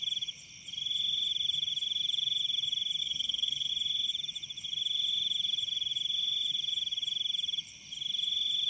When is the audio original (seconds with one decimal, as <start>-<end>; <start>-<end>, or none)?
0.0-3.0; 3.7-8.7